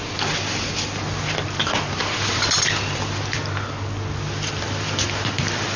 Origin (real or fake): real